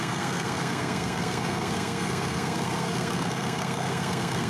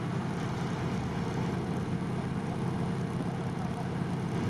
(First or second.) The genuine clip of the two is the second